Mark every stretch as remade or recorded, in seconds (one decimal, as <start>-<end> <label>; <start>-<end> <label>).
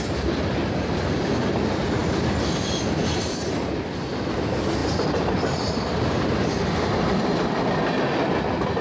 0.0-2.0 recorded; 2.0-3.5 remade; 3.5-4.8 recorded; 4.8-6.0 remade; 6.0-8.8 recorded